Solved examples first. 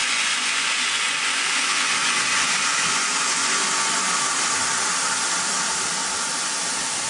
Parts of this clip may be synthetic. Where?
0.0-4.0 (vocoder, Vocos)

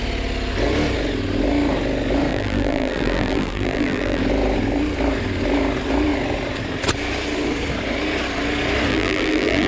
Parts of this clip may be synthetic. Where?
2.3-4.2 (vocoder, BigVGAN v2); 8.9-9.7